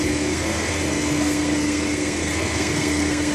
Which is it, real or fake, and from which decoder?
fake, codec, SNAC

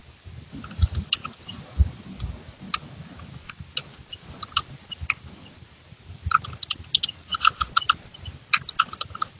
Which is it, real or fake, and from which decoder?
real